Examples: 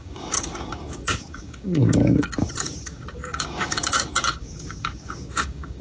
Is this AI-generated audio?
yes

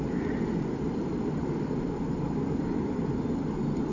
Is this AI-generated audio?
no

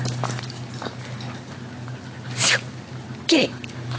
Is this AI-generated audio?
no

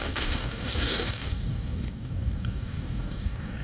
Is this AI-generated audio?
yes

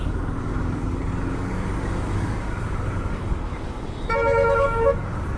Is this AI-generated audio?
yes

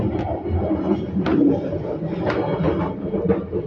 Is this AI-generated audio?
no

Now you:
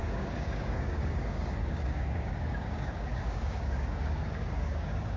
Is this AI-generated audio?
yes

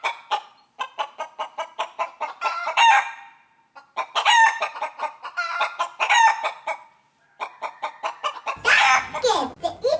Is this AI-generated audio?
no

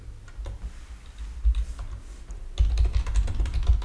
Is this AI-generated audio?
no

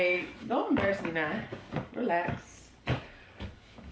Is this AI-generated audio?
yes